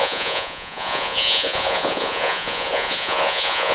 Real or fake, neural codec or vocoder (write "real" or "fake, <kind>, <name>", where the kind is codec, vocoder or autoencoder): fake, vocoder, Vocos